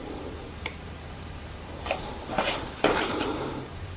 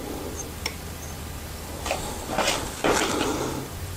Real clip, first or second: second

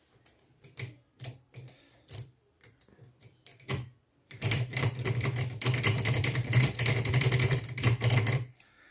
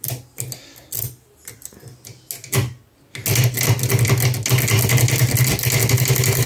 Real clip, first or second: second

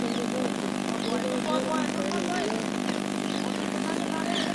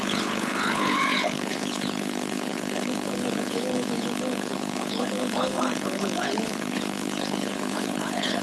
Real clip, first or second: first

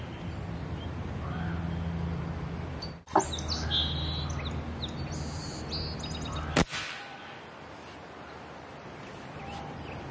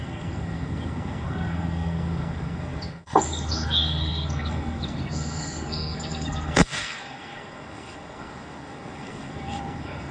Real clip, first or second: first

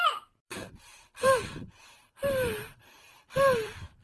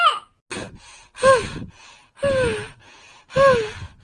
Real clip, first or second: second